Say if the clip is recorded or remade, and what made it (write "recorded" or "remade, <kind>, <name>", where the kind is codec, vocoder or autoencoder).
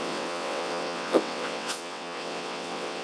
remade, vocoder, WaveNeXt